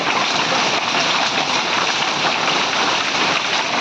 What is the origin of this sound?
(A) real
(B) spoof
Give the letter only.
B